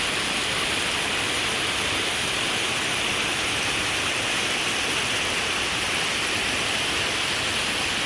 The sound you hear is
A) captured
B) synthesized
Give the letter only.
A